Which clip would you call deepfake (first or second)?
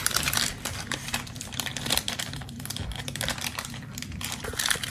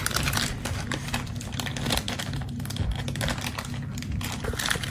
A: first